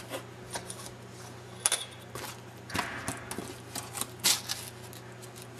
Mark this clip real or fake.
real